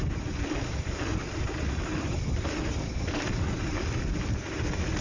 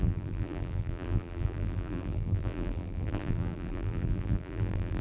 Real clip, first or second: first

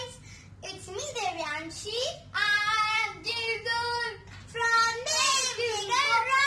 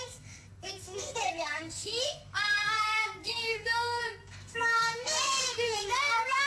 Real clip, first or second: first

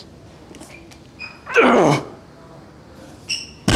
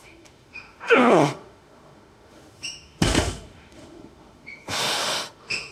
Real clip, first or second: first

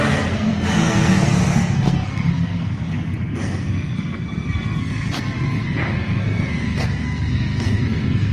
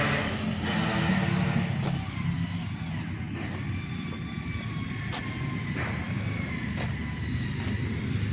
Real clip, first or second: second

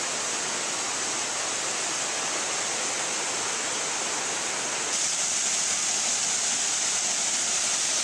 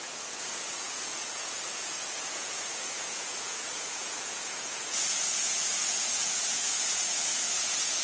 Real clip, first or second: first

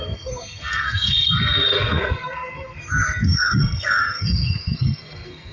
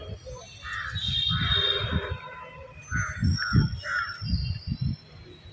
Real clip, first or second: second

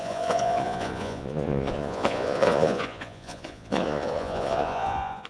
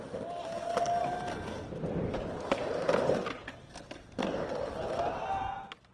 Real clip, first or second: second